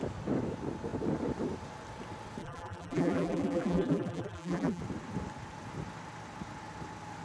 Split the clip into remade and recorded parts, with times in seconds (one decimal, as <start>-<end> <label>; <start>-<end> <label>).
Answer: 0.0-2.4 recorded; 2.4-4.8 remade; 4.8-7.2 recorded